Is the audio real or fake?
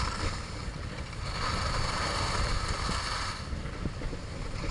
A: real